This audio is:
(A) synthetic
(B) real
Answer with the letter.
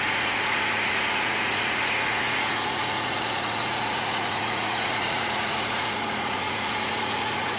A